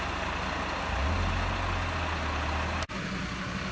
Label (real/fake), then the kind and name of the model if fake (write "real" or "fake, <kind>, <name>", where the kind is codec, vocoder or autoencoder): real